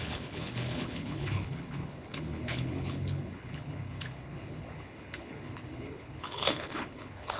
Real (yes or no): no